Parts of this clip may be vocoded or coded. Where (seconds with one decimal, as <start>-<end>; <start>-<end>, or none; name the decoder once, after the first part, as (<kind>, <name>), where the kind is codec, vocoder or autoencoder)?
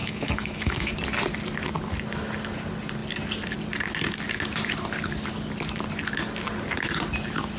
0.0-0.9 (autoencoder, DAC-VAE)